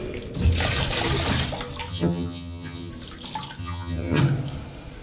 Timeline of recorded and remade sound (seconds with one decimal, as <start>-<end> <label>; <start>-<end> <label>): 0.0-1.9 recorded; 1.9-2.9 remade; 2.9-3.6 recorded; 3.6-4.2 remade; 4.2-5.0 recorded